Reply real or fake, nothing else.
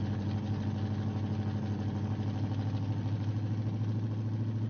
real